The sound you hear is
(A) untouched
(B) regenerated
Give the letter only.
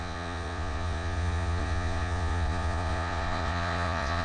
B